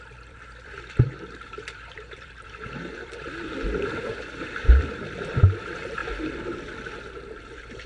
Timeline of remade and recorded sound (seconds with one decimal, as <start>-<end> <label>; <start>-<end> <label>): 0.0-6.0 remade; 6.0-7.4 recorded; 7.4-7.9 remade

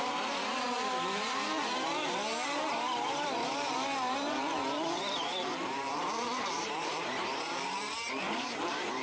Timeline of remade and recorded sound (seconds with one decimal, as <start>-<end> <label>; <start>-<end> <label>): 0.0-9.0 remade

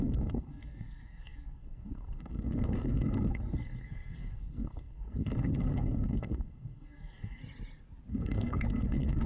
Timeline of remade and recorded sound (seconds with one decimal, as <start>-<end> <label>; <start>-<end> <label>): 0.0-7.4 remade; 7.4-8.1 recorded; 8.1-9.3 remade

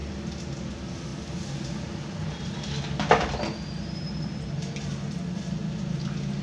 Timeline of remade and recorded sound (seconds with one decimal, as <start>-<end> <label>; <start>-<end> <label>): 0.0-6.4 recorded

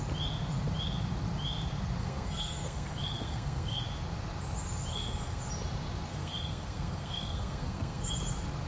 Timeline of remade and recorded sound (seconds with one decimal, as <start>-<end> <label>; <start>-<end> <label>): 0.0-2.0 recorded; 2.0-3.8 remade; 3.8-4.9 recorded; 4.9-5.4 remade; 5.4-6.1 recorded; 6.1-8.1 remade; 8.1-8.7 recorded

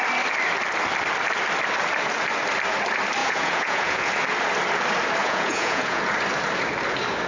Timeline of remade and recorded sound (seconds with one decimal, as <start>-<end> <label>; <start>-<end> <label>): 0.0-3.2 recorded; 3.2-4.1 remade; 4.1-5.2 recorded; 5.2-6.0 remade; 6.0-7.3 recorded

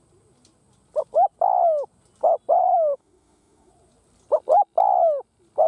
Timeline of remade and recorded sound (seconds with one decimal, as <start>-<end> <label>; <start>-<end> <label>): 0.0-2.6 recorded; 2.6-3.7 remade; 3.7-5.7 recorded